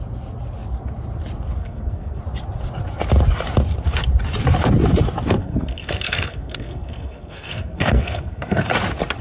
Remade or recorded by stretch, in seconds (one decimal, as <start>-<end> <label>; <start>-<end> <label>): 0.0-1.6 recorded; 1.6-2.2 remade; 2.2-5.4 recorded; 5.4-8.7 remade; 8.7-9.2 recorded